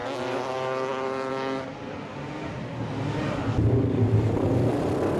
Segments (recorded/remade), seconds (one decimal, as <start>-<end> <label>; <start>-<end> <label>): 0.0-5.2 recorded